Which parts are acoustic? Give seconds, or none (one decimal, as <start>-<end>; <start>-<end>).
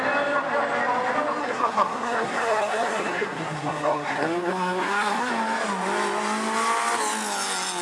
0.0-1.4; 5.3-7.8